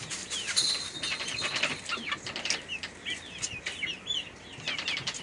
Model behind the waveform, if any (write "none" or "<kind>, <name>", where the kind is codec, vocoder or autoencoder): none